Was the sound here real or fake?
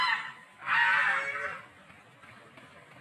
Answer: real